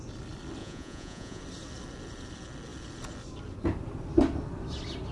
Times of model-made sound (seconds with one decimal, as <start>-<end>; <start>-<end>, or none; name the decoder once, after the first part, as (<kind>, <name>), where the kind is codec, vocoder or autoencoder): 0.6-1.4 (vocoder, Vocos)

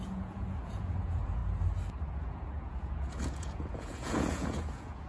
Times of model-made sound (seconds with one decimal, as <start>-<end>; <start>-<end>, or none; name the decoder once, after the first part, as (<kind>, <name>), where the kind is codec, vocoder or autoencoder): 0.0-1.4 (vocoder, Vocos); 2.1-5.1

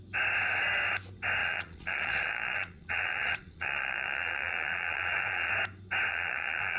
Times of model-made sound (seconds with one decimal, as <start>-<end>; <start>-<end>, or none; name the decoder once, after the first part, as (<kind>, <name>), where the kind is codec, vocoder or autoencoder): 1.4-5.5 (vocoder, Vocos); 6.1-6.8

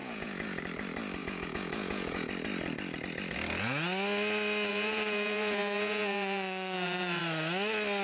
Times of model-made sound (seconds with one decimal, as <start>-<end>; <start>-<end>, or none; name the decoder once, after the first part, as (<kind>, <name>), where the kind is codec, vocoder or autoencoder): 0.0-0.6 (vocoder, Vocos); 1.2-2.3; 4.7-7.2

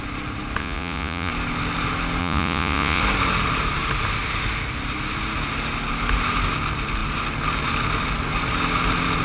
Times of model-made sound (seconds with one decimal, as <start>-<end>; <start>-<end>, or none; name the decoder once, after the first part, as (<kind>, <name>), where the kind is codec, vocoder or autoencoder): 0.6-1.3 (vocoder, Vocos); 2.2-3.0

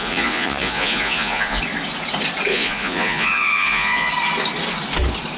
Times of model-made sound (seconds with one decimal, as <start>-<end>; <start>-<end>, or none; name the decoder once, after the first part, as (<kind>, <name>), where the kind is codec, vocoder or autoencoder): 0.0-1.6 (vocoder, Vocos); 2.5-4.1